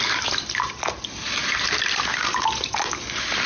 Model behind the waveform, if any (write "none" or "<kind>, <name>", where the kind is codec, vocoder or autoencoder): none